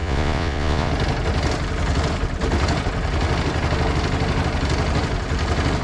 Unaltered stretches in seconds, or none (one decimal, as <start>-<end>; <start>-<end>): 0.9-5.8